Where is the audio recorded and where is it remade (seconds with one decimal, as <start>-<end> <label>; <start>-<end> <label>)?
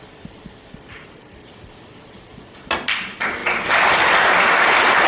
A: 0.0-5.1 remade